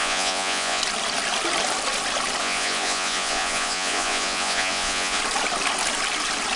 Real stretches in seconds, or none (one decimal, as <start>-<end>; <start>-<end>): 0.8-2.4; 5.2-6.6